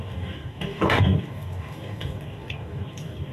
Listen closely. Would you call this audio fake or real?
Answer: fake